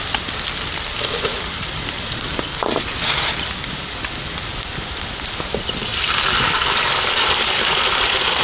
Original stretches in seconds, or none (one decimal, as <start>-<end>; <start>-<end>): 5.9-6.4